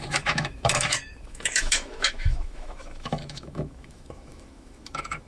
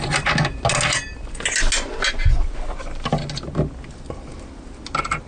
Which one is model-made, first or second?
first